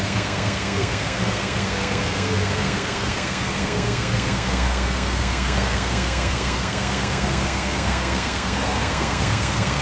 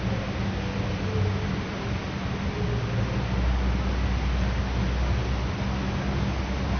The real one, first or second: second